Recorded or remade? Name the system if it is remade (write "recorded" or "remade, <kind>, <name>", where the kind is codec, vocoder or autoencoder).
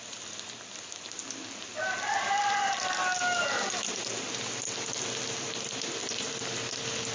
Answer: recorded